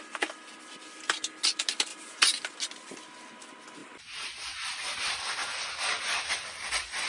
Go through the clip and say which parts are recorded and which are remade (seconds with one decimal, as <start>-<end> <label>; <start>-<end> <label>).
0.0-1.9 recorded; 1.9-2.6 remade; 2.6-7.1 recorded